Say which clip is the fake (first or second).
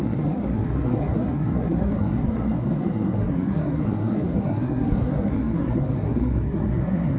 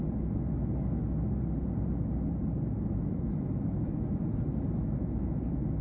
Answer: first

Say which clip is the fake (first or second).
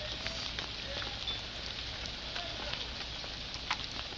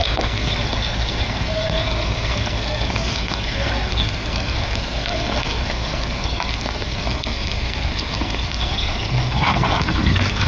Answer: second